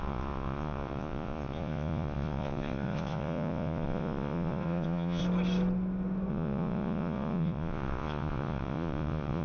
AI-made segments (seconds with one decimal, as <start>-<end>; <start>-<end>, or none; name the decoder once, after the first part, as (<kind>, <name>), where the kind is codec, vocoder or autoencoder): 0.0-5.2 (vocoder, Vocos); 6.3-9.4

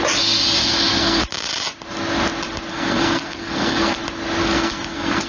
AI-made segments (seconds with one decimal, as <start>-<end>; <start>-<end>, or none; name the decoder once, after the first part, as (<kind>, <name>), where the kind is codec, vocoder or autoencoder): 0.6-1.2 (codec, SNAC); 2.7-4.0; 4.4-5.3

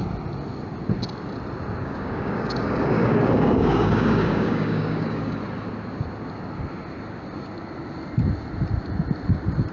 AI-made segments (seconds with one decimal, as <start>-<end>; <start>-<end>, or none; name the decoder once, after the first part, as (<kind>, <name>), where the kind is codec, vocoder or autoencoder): 1.8-5.4 (codec, DAC)

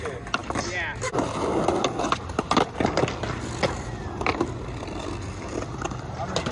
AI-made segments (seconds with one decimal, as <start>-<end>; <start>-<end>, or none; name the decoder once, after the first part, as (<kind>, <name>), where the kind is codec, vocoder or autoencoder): none

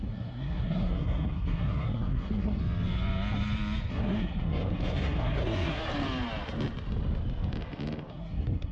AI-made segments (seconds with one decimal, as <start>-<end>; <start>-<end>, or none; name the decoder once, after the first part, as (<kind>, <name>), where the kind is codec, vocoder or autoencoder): 0.0-2.6 (codec, SNAC); 3.9-5.8; 8.1-8.7

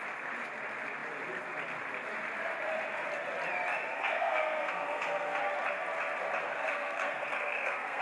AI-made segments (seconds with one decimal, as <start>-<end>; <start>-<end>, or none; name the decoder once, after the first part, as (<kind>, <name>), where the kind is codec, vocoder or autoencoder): 3.9-5.4 (codec, SNAC); 6.4-8.0

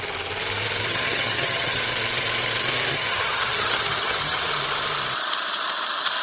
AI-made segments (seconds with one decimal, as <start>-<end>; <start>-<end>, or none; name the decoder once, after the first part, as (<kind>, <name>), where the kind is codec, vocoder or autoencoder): 0.9-1.8 (vocoder, HiFi-GAN); 2.9-4.4

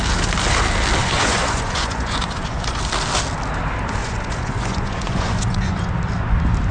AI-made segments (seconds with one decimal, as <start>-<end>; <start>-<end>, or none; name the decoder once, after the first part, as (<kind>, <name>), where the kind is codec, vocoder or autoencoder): 1.0-2.8 (vocoder, Vocos); 4.0-5.9